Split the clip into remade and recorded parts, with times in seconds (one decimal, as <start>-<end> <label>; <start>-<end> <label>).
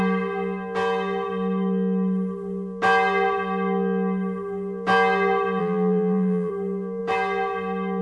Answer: 0.0-5.6 recorded; 5.6-6.5 remade; 6.5-8.0 recorded